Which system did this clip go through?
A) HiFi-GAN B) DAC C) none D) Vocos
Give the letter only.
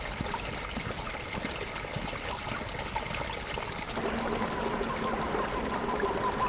C